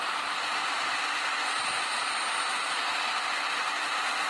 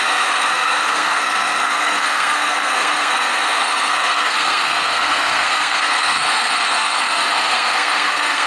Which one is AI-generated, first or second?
second